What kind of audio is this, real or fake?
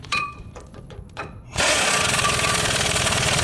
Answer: fake